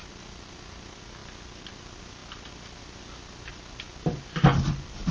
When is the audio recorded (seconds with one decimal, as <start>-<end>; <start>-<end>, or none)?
0.0-5.1